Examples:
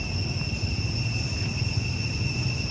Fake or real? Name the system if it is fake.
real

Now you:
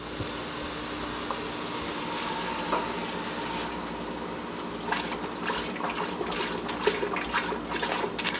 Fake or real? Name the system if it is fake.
real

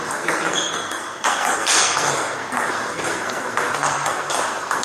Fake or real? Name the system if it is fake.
fake, codec, SNAC